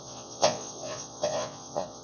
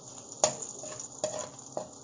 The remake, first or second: first